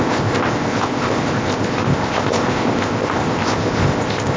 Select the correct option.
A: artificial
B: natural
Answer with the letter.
A